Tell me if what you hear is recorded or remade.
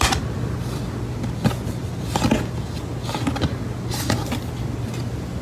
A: recorded